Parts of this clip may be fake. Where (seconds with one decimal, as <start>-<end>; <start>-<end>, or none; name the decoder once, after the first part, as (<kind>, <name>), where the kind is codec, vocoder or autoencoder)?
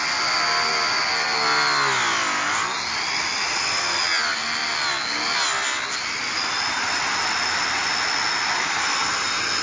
none